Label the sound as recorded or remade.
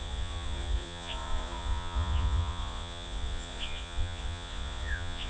remade